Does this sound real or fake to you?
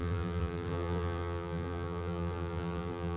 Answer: fake